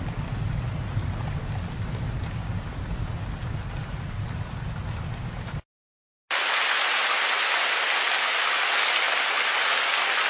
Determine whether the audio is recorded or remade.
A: recorded